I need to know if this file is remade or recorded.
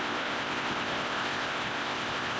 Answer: remade